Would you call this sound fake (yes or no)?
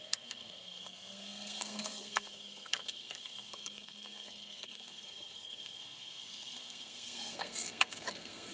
yes